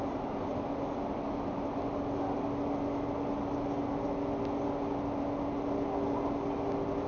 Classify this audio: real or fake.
real